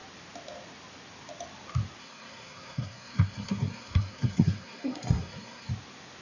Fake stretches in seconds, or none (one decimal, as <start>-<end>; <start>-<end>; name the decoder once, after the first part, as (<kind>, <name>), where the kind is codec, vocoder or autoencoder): 2.0-5.7 (codec, SNAC)